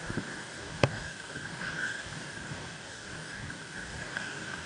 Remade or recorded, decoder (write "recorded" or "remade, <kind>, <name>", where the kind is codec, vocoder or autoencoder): remade, codec, DAC